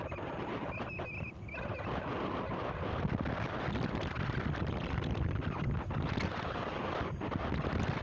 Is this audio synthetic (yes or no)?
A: no